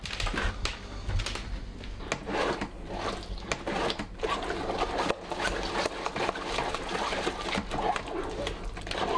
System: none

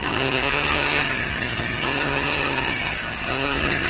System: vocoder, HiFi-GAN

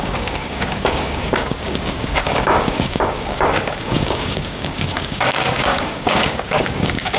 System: codec, DAC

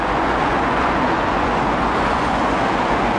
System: vocoder, Vocos